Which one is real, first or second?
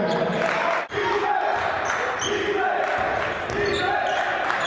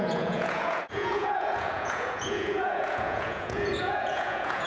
first